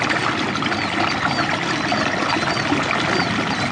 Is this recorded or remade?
recorded